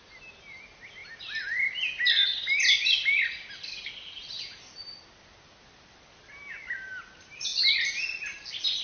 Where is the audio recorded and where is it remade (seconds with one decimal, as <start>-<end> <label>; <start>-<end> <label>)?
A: 0.0-8.8 recorded